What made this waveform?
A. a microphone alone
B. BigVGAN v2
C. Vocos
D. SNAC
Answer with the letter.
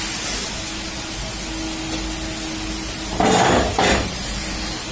A